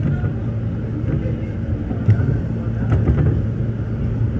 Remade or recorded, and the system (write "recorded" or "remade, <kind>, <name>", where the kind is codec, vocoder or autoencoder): recorded